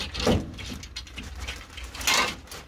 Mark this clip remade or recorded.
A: recorded